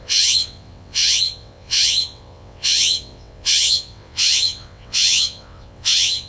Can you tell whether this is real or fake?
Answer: fake